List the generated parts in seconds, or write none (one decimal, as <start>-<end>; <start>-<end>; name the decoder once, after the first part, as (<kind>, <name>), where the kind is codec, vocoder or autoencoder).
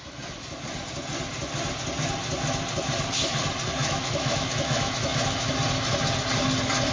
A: 3.8-5.5 (autoencoder, DAC-VAE)